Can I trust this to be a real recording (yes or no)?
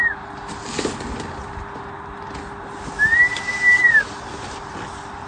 yes